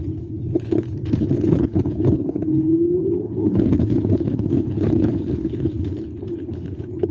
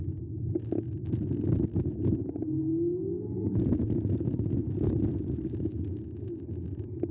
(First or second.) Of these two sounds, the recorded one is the second